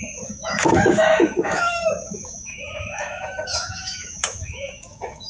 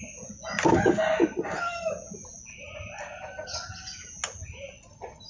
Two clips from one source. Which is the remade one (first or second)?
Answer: first